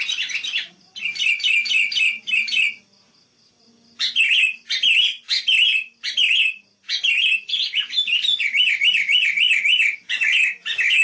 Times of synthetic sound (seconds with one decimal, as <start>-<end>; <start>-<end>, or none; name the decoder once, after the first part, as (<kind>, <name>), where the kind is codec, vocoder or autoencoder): none